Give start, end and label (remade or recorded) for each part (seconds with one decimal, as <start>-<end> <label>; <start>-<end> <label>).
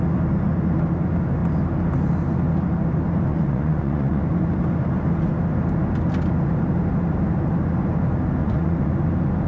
0.0-3.3 recorded; 3.3-4.2 remade; 4.2-8.4 recorded; 8.4-8.9 remade; 8.9-9.5 recorded